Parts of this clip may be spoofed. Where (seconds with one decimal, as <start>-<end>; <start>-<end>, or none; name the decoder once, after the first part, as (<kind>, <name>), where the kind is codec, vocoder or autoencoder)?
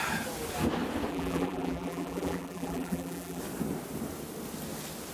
1.1-3.4 (vocoder, BigVGAN v2)